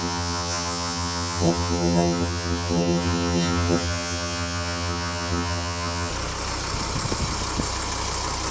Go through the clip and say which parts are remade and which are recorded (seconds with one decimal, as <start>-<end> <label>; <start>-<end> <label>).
0.0-6.1 remade; 6.1-8.5 recorded